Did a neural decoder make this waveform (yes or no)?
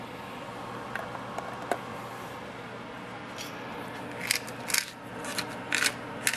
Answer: no